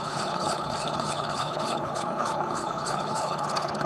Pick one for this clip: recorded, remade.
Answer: remade